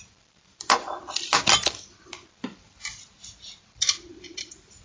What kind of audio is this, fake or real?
fake